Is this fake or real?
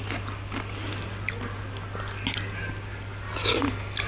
real